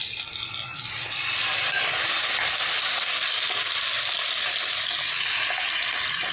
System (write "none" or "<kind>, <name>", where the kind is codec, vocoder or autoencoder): none